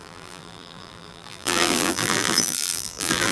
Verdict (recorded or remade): remade